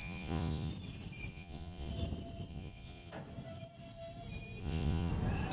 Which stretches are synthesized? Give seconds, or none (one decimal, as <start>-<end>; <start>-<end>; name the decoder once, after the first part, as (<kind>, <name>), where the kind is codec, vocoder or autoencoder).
0.0-0.7 (vocoder, Vocos); 1.3-1.9; 2.5-3.1; 4.6-5.1